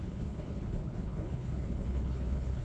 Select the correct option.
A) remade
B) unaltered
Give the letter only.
A